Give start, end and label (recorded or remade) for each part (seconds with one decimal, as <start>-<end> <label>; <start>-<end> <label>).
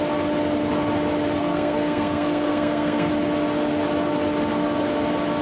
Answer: 0.0-1.4 recorded; 1.4-3.1 remade; 3.1-5.4 recorded